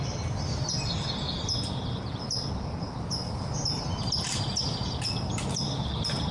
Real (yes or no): yes